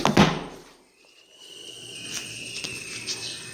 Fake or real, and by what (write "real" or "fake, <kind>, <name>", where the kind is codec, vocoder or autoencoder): real